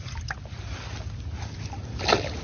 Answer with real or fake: real